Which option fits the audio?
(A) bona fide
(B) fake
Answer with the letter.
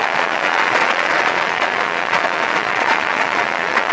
B